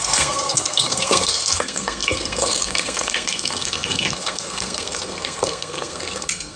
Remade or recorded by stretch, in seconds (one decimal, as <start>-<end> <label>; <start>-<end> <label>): 0.0-6.6 remade